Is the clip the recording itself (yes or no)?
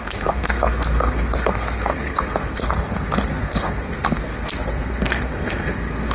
no